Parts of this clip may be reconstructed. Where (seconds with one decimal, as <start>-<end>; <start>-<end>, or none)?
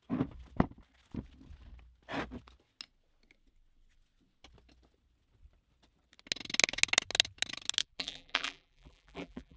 7.8-9.6